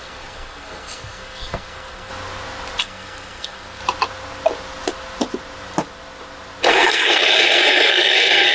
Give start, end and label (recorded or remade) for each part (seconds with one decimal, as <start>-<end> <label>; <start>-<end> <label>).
0.0-2.1 remade; 2.1-2.8 recorded; 2.8-3.8 remade; 3.8-6.7 recorded; 6.7-8.5 remade